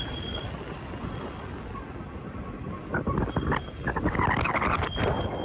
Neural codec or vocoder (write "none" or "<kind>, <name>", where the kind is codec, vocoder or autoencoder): none